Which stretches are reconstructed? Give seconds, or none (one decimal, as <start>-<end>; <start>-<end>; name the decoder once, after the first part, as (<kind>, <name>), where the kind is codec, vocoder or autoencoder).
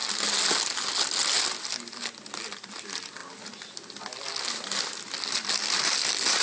none